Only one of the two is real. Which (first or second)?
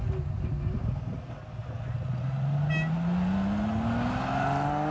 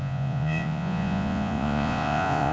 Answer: first